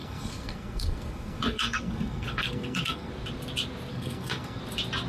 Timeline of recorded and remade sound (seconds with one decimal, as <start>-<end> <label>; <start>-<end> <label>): 0.0-3.1 remade; 3.1-3.9 recorded; 3.9-4.6 remade; 4.6-5.1 recorded